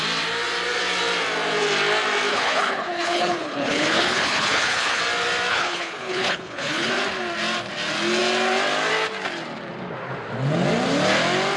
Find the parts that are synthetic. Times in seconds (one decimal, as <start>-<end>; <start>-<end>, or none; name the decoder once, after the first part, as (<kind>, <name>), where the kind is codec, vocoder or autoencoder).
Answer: 2.3-5.0 (codec, HILCodec); 5.5-6.9